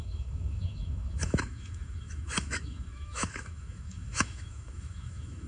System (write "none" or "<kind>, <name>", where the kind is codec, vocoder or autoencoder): autoencoder, DAC-VAE